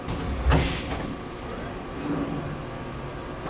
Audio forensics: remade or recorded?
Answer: recorded